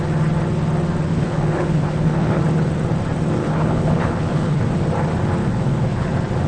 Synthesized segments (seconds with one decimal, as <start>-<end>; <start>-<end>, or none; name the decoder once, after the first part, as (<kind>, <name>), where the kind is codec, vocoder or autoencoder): 1.1-2.4 (codec, HILCodec); 3.4-4.6; 5.4-6.1